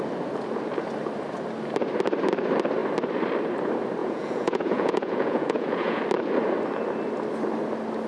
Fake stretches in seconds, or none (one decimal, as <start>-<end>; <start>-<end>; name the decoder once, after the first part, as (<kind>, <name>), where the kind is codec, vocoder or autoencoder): 4.0-6.0 (vocoder, Vocos)